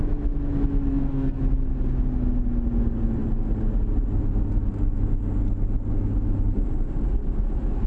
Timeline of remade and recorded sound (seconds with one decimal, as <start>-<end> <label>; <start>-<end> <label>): 0.0-0.9 recorded; 0.9-1.4 remade; 1.4-7.9 recorded